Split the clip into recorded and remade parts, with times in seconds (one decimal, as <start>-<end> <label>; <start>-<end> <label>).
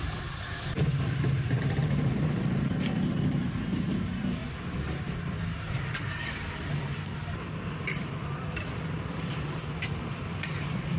0.0-4.4 remade; 4.4-6.8 recorded; 6.8-11.0 remade